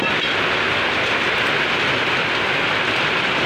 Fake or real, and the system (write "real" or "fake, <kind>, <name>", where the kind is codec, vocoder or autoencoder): real